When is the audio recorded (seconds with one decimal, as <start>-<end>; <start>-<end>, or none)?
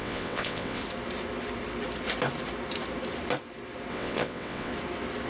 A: 0.8-3.9; 4.7-5.3